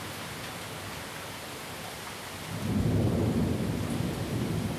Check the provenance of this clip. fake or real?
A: real